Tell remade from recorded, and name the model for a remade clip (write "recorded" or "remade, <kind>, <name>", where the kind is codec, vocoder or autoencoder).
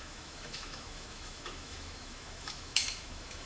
remade, autoencoder, DAC-VAE